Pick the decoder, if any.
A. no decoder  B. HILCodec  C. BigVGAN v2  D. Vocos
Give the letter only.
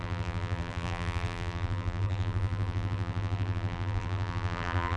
C